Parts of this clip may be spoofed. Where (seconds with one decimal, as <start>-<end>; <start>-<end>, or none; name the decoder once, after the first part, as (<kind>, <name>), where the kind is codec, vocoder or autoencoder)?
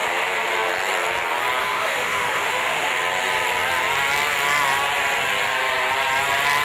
1.6-2.9 (autoencoder, DAC-VAE)